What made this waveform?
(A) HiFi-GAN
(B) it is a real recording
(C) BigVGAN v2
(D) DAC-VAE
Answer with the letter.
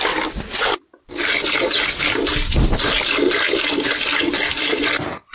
B